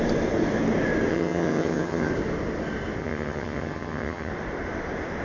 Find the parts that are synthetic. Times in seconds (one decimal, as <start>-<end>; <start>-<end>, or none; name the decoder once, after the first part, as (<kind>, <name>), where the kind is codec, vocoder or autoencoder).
1.1-2.1 (vocoder, HiFi-GAN); 3.0-4.3